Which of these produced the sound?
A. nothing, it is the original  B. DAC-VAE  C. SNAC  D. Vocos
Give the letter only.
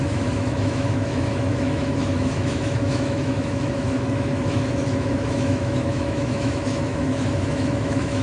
B